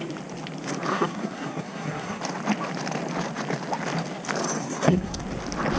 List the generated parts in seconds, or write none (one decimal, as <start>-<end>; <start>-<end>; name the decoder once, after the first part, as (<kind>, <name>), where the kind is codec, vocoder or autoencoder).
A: 0.9-2.2 (codec, SNAC); 4.6-5.2